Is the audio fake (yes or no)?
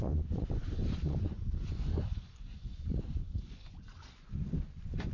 yes